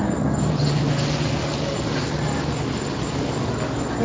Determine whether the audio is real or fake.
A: real